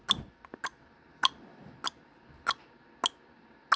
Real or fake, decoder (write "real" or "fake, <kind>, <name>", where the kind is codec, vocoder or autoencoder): real